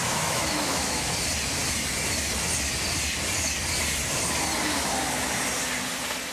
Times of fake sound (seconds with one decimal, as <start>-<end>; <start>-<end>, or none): 0.0-1.1